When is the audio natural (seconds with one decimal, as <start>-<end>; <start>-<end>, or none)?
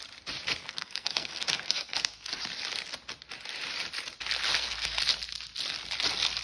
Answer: 0.0-0.6; 2.4-4.5; 5.0-6.4